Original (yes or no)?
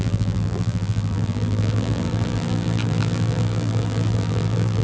no